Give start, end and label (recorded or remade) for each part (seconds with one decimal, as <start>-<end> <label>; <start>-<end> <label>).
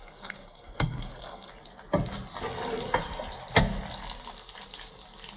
0.0-1.5 remade; 1.5-5.4 recorded